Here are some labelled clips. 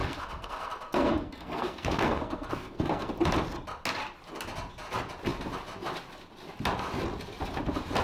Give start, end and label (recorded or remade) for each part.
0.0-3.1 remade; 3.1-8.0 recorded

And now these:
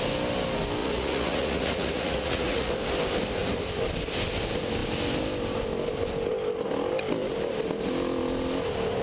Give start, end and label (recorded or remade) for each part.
0.0-0.8 recorded; 0.8-2.7 remade; 2.7-9.0 recorded

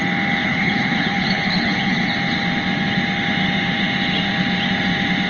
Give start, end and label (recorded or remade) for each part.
0.0-0.4 recorded; 0.4-2.1 remade; 2.1-5.3 recorded

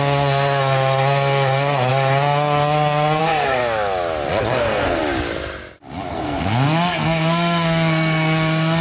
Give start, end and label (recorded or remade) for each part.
0.0-3.6 remade; 3.6-4.4 recorded; 4.4-5.0 remade; 5.0-6.1 recorded; 6.1-8.8 remade

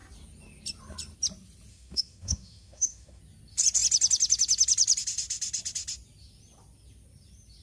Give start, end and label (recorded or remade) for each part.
0.0-1.7 recorded; 1.7-3.2 remade; 3.2-7.6 recorded

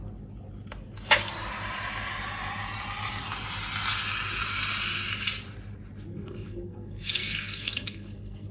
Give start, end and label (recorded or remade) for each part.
0.0-6.1 recorded; 6.1-8.5 remade

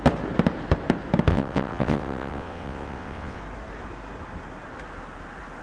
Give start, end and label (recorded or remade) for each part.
0.0-1.3 recorded; 1.3-3.4 remade; 3.4-5.6 recorded

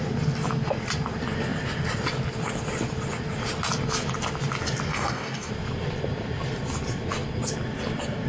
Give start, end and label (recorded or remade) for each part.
0.0-4.9 recorded; 4.9-5.5 remade; 5.5-8.3 recorded